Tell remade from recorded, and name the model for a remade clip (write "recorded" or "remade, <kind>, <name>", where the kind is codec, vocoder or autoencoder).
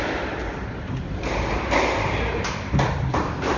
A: remade, vocoder, BigVGAN v2